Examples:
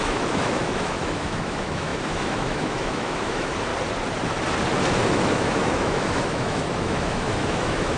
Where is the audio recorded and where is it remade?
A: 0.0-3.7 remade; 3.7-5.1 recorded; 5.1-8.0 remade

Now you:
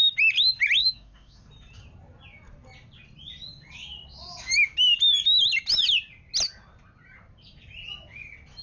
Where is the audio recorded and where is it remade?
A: 0.0-0.8 recorded; 0.8-1.5 remade; 1.5-8.6 recorded

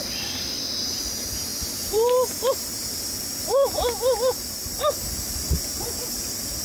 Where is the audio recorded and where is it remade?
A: 0.0-6.6 recorded

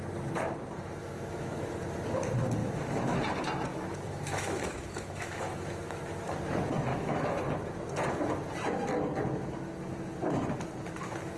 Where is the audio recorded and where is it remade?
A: 0.0-1.0 recorded; 1.0-1.7 remade; 1.7-2.6 recorded; 2.6-3.2 remade; 3.2-3.7 recorded; 3.7-6.0 remade; 6.0-6.9 recorded; 6.9-7.4 remade; 7.4-11.4 recorded

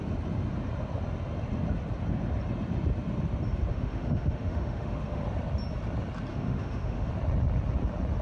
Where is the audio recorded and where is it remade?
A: 0.0-3.7 recorded; 3.7-5.2 remade; 5.2-6.3 recorded; 6.3-7.1 remade; 7.1-8.2 recorded

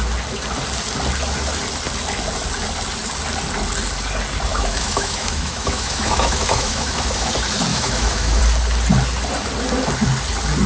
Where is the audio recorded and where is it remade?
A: 0.0-4.5 recorded; 4.5-7.3 remade; 7.3-7.7 recorded; 7.7-8.4 remade; 8.4-10.7 recorded